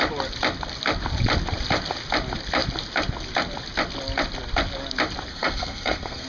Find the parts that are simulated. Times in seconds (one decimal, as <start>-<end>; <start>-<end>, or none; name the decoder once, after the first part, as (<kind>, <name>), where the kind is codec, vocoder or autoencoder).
5.3-6.3 (codec, SNAC)